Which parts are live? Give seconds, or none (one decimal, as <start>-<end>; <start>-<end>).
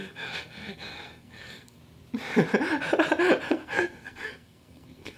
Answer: 1.8-3.5